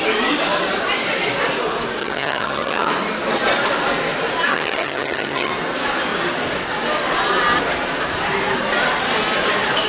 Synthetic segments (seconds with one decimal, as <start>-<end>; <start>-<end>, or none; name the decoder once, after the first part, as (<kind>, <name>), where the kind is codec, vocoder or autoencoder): 2.0-2.9 (vocoder, HiFi-GAN); 4.5-5.5